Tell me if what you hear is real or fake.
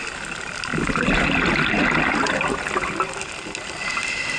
real